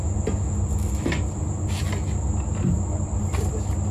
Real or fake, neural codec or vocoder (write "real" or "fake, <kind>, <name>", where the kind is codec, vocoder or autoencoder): real